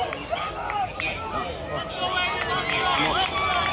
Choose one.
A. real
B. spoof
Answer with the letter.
A